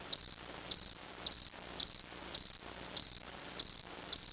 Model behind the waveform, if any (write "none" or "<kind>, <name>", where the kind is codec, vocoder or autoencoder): none